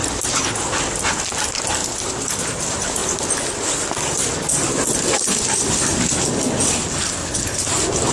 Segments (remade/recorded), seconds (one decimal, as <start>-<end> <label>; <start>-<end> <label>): 0.0-1.3 recorded; 1.3-1.8 remade; 1.8-2.4 recorded; 2.4-3.0 remade; 3.0-8.1 recorded